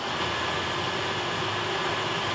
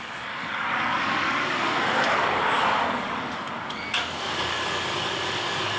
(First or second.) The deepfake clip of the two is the second